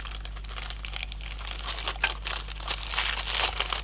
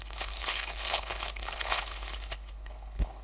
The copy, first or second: second